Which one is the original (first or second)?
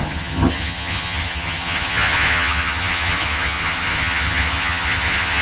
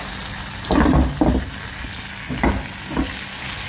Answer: second